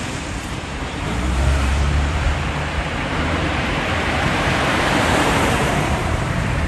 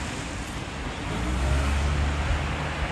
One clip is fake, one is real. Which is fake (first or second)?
first